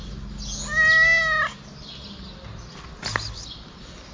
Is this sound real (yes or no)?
yes